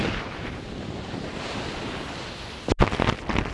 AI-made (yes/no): no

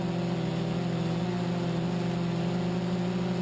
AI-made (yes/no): no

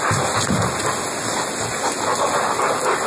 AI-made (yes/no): no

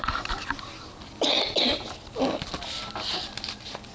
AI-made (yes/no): no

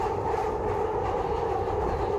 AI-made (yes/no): yes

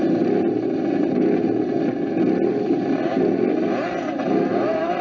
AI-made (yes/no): no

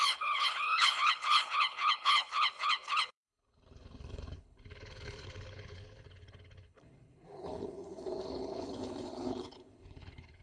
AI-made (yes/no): yes